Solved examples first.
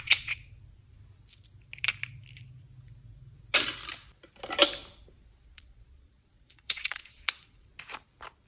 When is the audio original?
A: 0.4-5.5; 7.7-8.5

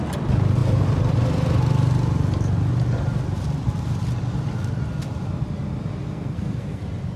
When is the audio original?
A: 0.0-6.0; 6.8-7.2

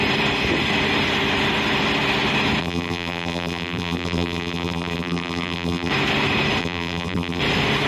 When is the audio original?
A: 0.0-2.6; 5.9-6.6; 7.4-7.9

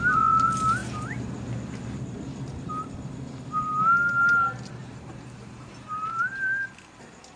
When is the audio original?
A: 0.0-0.8; 2.7-4.8; 5.7-7.4